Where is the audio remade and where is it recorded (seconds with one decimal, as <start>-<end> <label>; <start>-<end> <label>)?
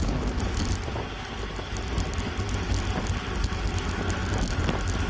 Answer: 0.0-5.1 recorded